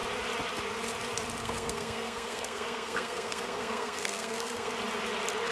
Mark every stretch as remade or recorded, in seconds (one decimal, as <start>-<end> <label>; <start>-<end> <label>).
0.0-1.4 recorded; 1.4-4.7 remade; 4.7-5.5 recorded